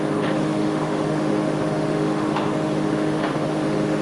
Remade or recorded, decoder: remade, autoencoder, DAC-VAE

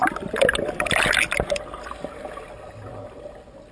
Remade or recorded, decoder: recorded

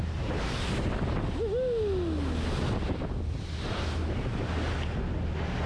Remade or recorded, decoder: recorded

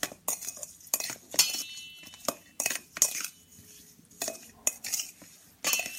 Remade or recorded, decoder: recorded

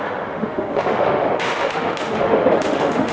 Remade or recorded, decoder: remade, autoencoder, DAC-VAE